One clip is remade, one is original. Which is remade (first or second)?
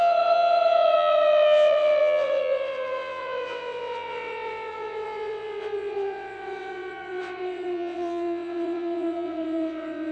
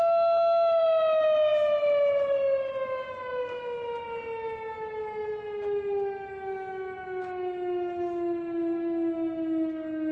first